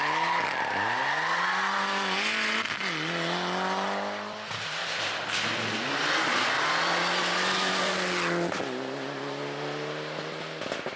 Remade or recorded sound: recorded